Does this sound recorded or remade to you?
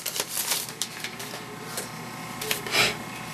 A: recorded